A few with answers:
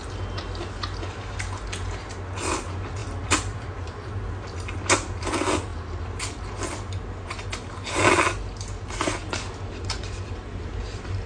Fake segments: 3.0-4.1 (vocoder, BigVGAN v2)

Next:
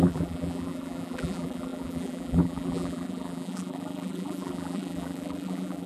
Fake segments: 0.0-5.9 (vocoder, BigVGAN v2)

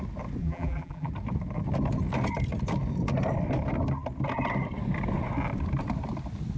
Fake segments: 0.4-1.1 (vocoder, BigVGAN v2)

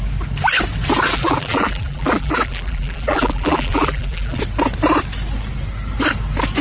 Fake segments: 1.1-4.4 (vocoder, BigVGAN v2)

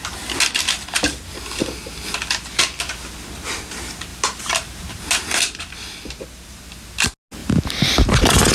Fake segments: 4.1-5.7 (vocoder, BigVGAN v2)

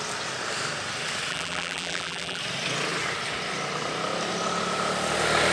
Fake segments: 1.3-2.4 (vocoder, BigVGAN v2)

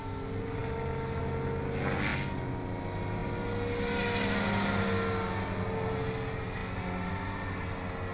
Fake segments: 6.6-7.1 (vocoder, BigVGAN v2)

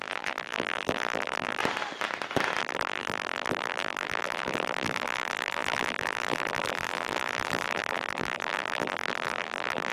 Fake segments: 0.0-1.6 (vocoder, BigVGAN v2); 2.6-9.9